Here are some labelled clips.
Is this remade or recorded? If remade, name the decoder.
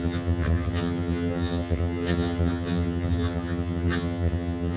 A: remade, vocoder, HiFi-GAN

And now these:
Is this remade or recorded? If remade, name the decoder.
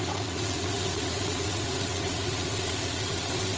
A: remade, vocoder, WaveNeXt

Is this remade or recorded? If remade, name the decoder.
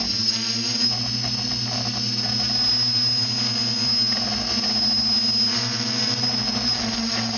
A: recorded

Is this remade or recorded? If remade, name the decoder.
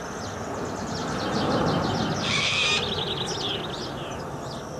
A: recorded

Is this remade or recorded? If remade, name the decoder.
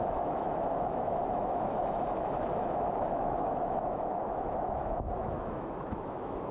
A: remade, autoencoder, DAC-VAE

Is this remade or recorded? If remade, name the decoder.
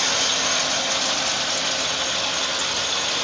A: recorded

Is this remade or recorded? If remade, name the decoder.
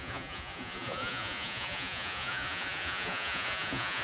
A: remade, vocoder, Vocos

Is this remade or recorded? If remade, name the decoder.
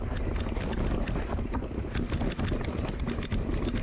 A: recorded